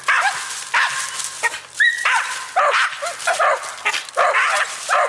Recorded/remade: recorded